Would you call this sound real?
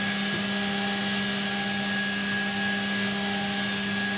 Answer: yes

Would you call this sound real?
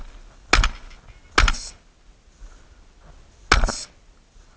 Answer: yes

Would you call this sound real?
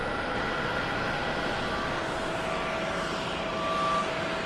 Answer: yes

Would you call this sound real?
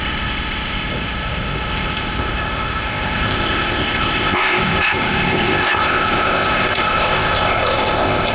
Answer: no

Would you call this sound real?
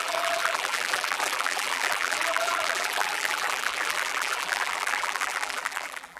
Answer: no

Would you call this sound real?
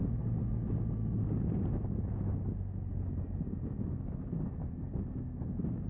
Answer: yes